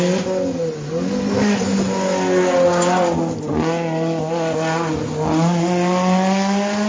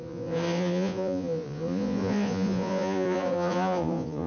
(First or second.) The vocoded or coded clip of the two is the second